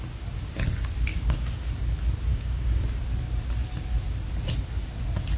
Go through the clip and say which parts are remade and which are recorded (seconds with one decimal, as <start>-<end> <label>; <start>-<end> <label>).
0.0-1.1 recorded; 1.1-1.7 remade; 1.7-2.3 recorded; 2.3-2.8 remade; 2.8-5.4 recorded